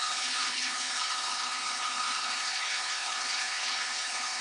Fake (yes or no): yes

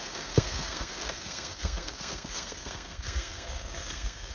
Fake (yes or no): yes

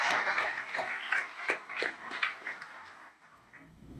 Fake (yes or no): yes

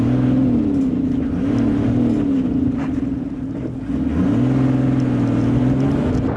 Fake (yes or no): no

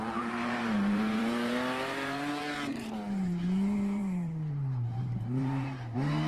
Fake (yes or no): yes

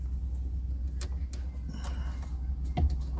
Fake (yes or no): no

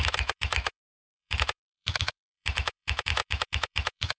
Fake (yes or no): yes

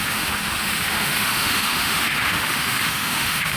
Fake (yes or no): yes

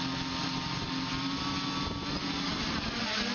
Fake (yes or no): no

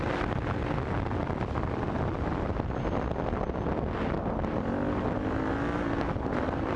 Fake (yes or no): no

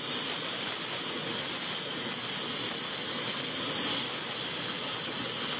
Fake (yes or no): no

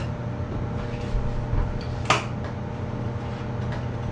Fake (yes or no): no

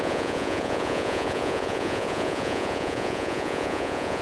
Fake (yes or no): yes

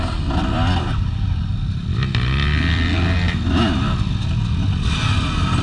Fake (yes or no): no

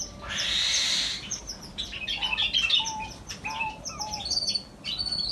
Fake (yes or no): no